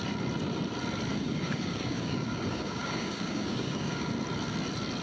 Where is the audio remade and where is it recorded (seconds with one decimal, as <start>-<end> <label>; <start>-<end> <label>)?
0.0-1.1 recorded; 1.1-4.1 remade; 4.1-5.0 recorded